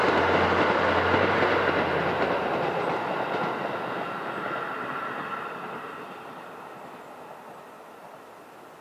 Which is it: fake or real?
real